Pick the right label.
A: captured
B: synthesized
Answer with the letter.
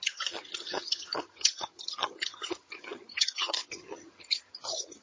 B